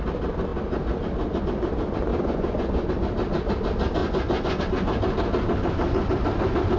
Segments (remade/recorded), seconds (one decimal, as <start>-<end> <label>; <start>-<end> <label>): 0.0-2.1 recorded; 2.1-2.9 remade; 2.9-4.0 recorded; 4.0-4.6 remade; 4.6-6.8 recorded